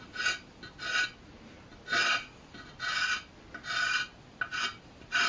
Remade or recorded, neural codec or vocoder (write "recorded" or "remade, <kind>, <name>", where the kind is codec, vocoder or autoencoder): recorded